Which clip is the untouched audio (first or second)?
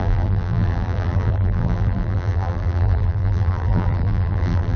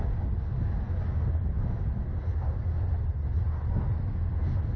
second